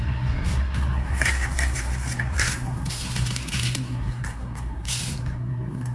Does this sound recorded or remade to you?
remade